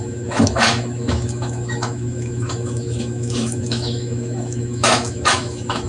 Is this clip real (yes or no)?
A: no